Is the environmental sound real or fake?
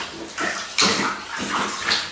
real